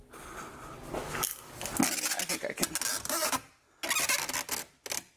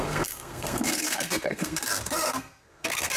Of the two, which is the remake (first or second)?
second